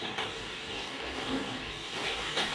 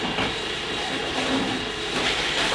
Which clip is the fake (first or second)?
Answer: first